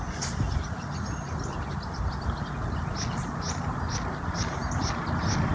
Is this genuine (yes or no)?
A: yes